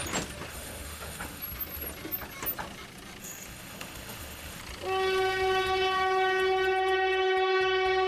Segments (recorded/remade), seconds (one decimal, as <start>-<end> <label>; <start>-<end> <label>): 0.0-0.5 recorded; 0.5-1.4 remade; 1.4-3.2 recorded; 3.2-4.6 remade; 4.6-8.1 recorded